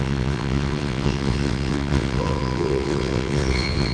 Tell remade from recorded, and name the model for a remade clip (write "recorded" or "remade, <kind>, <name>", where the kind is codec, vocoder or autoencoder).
remade, vocoder, WaveNeXt